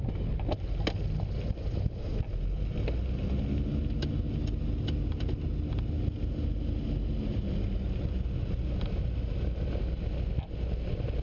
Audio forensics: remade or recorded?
recorded